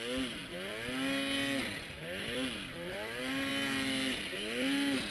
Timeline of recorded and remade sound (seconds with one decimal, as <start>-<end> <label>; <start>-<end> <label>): 0.0-5.1 recorded